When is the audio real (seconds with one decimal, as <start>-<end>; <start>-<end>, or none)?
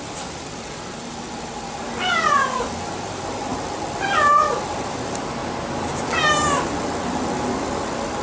0.0-2.1; 2.7-8.2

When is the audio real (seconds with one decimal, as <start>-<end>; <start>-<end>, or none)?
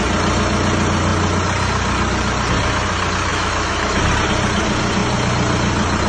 0.0-3.3; 4.0-6.1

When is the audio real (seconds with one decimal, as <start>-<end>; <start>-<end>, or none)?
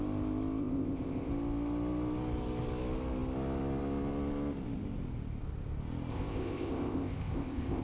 0.0-0.6; 1.3-6.1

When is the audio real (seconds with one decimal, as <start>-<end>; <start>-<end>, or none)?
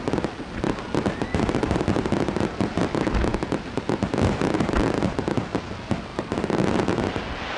0.0-7.6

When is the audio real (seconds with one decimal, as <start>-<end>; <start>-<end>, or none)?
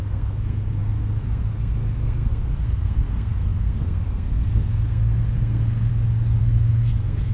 5.9-6.4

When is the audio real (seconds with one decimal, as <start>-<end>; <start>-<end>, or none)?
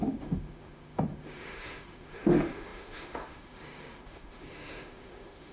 none